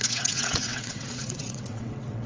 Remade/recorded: remade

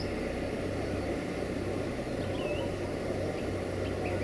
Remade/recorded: recorded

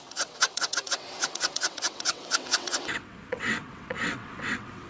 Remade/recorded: remade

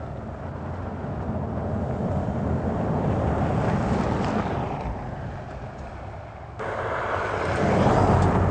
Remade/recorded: recorded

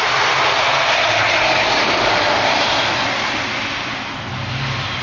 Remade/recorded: recorded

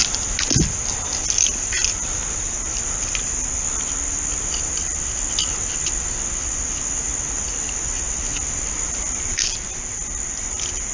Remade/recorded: recorded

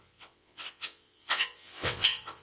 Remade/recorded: remade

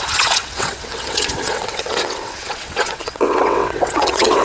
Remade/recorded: remade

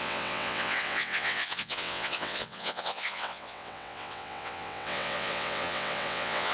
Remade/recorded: remade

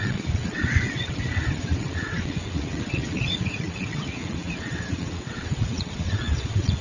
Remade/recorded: remade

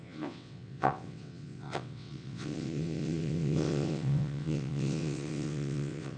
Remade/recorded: remade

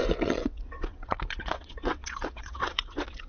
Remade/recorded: remade